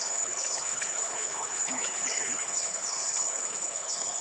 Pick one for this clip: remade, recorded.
remade